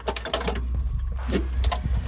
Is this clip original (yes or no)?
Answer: yes